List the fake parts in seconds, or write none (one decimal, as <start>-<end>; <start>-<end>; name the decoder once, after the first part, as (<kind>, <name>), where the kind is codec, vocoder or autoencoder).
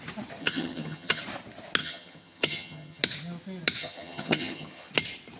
0.4-1.2 (vocoder, HiFi-GAN); 1.8-3.0; 3.8-4.9